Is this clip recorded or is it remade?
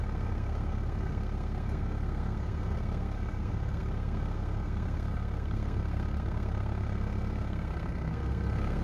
remade